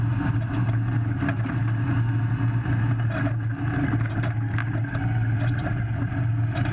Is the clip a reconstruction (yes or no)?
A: no